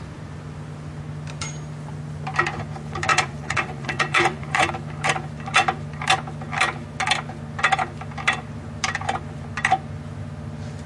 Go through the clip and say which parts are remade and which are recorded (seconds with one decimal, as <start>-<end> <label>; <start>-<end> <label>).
0.0-3.1 recorded; 3.1-4.7 remade; 4.7-10.9 recorded